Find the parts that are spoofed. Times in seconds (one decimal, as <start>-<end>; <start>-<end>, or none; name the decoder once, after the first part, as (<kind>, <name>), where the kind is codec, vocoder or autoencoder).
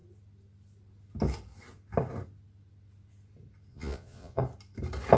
3.7-4.4 (vocoder, Vocos)